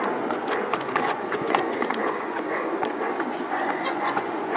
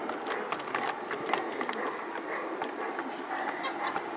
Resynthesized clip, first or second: first